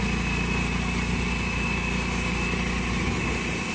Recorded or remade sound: recorded